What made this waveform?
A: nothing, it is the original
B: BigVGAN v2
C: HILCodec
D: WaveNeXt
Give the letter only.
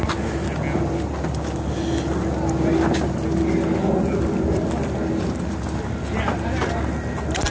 A